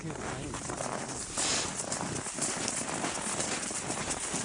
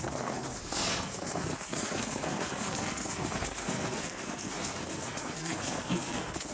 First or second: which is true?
first